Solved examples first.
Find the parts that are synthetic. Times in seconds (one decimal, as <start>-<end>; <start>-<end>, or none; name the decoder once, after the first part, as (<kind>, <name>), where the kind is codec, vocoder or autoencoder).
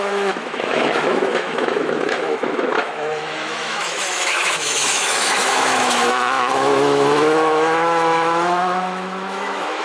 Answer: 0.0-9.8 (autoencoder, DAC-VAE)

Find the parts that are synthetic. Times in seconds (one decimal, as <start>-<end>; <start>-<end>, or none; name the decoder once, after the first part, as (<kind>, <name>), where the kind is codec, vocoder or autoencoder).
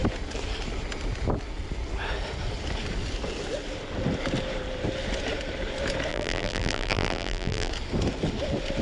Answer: 6.1-7.7 (vocoder, BigVGAN v2)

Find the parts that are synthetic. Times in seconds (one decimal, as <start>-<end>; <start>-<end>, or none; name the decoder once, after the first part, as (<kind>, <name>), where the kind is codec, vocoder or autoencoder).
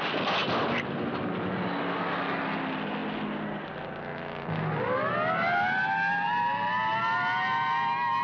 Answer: none